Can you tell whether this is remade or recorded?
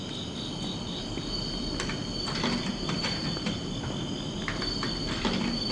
recorded